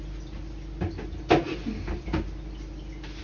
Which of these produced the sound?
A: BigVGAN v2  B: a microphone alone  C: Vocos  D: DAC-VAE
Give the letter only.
B